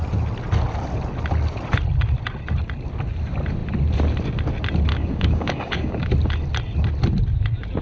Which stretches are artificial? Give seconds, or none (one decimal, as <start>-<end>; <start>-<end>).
4.9-6.1